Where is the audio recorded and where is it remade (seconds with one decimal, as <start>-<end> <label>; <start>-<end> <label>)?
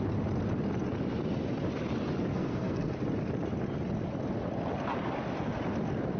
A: 0.0-2.3 recorded; 2.3-2.9 remade; 2.9-6.2 recorded